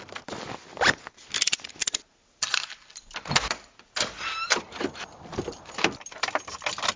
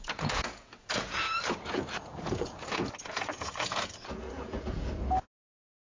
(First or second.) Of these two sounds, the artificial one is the second